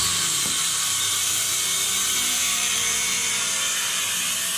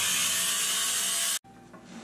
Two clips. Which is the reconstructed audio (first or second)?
first